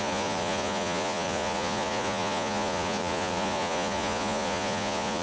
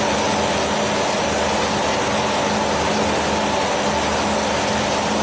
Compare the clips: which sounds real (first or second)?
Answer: second